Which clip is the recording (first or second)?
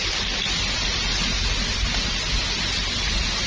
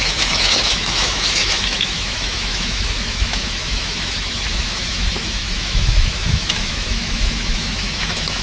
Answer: first